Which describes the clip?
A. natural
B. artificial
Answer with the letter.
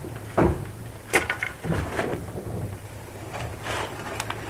B